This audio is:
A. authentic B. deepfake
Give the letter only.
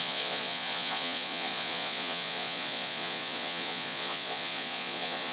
B